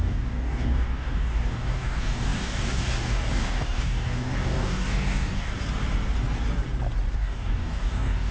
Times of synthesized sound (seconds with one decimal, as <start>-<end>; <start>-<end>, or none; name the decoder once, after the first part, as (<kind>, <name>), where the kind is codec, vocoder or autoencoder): 0.0-5.5 (codec, DAC); 7.1-8.3

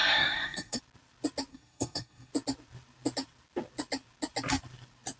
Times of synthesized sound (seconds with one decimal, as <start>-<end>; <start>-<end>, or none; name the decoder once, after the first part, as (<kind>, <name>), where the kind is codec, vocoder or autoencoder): 0.0-0.8 (codec, SNAC); 1.5-2.3

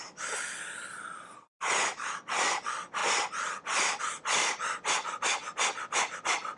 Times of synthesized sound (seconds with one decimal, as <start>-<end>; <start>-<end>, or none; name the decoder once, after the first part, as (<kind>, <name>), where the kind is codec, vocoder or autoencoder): none

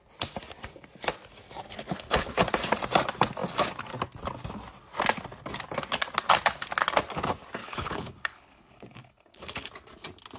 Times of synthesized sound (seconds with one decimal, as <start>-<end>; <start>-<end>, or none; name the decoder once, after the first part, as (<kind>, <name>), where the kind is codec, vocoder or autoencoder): 1.7-2.3 (codec, HILCodec); 7.6-9.7

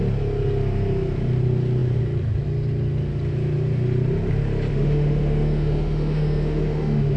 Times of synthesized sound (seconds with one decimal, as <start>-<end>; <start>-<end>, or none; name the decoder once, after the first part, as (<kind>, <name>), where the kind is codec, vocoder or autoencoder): 4.7-7.2 (autoencoder, DAC-VAE)